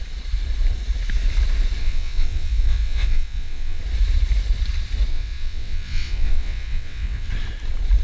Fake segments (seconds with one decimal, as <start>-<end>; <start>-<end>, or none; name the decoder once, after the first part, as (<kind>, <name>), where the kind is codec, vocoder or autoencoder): 1.8-3.8 (vocoder, WaveNeXt); 5.1-7.3